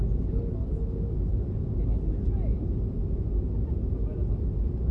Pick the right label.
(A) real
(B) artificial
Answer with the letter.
A